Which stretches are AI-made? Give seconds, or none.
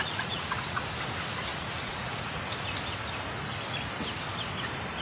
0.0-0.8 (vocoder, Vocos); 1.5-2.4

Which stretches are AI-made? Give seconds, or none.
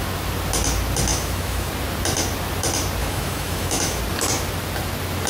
1.1-1.7 (autoencoder, DAC-VAE); 3.0-4.0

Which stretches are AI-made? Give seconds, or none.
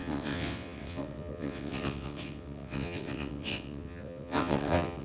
0.0-5.0 (vocoder, WaveNeXt)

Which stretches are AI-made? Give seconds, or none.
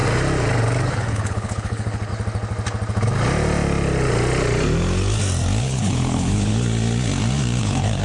0.9-2.1 (codec, HILCodec); 5.6-6.5; 7.6-8.0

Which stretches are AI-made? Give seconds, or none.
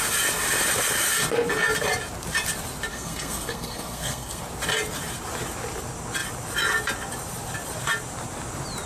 2.9-4.4 (codec, SNAC)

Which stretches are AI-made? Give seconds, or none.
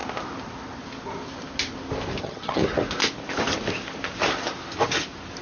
2.2-2.6 (vocoder, HiFi-GAN)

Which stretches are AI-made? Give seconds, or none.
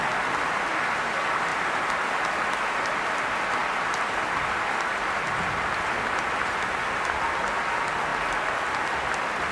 1.5-2.4 (vocoder, BigVGAN v2); 3.6-4.8; 8.1-9.1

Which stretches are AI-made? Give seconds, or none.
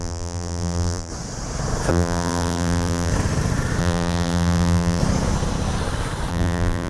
0.0-1.1 (vocoder, BigVGAN v2); 1.9-3.1; 3.8-5.0; 6.3-6.9